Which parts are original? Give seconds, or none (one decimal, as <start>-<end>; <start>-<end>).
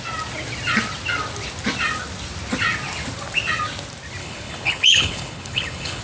0.0-4.2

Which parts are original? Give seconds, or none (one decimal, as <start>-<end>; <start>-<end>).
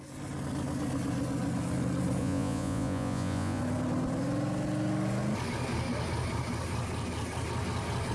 0.0-2.2; 3.6-8.1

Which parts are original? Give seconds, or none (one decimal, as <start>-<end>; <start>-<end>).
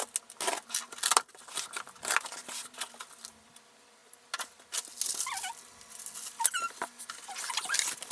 0.0-8.1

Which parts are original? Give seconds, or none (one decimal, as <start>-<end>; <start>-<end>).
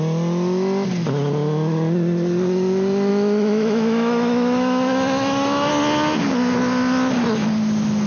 0.0-3.1; 5.7-8.1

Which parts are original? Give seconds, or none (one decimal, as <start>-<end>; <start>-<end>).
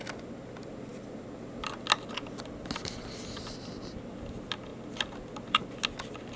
0.0-6.4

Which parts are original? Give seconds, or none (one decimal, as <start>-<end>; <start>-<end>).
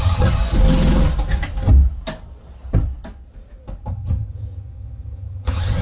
0.4-3.9